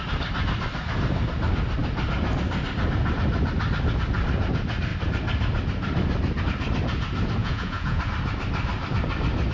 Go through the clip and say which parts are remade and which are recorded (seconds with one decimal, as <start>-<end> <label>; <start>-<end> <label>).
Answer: 0.0-7.4 recorded; 7.4-8.0 remade; 8.0-9.5 recorded